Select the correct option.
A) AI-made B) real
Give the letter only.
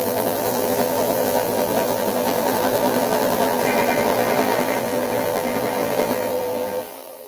A